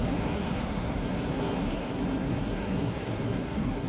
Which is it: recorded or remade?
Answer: remade